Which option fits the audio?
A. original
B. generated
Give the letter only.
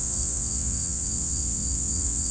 B